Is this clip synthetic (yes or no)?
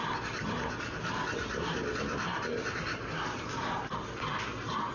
no